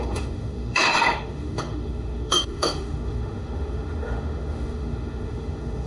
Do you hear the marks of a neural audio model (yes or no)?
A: yes